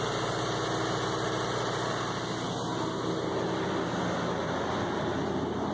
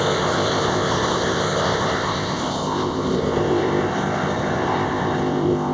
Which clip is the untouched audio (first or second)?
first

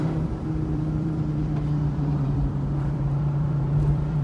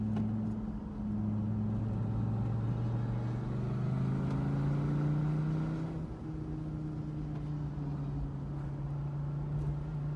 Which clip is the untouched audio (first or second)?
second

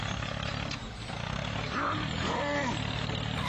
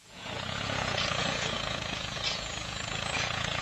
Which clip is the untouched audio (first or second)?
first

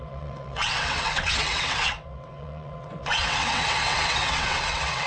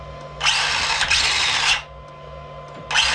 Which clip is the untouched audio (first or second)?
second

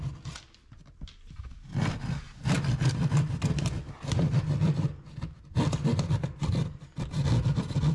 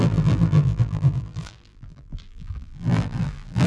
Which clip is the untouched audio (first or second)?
first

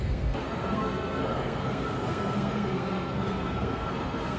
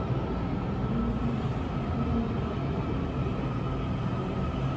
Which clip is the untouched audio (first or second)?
second